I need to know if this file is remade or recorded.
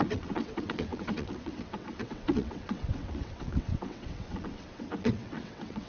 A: remade